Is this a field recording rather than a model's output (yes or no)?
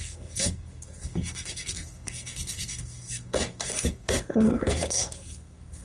no